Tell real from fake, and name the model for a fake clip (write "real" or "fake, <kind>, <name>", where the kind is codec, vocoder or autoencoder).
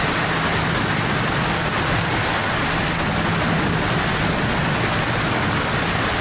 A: real